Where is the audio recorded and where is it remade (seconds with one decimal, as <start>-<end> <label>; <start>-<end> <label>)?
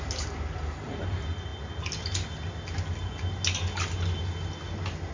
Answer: 0.0-5.1 recorded